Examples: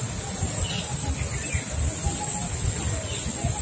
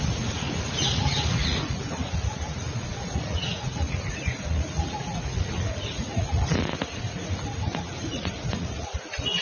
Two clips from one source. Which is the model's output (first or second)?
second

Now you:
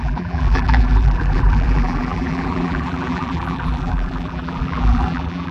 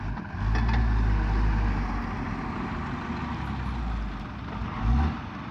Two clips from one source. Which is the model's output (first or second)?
first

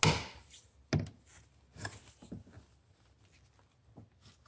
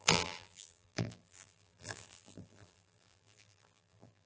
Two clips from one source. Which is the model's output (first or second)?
second